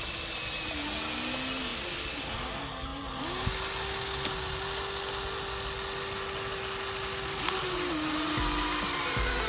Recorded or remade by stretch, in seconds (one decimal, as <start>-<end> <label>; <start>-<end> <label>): 0.0-9.5 recorded